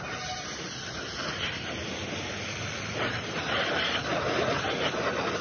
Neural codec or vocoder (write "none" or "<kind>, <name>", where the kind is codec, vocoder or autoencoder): none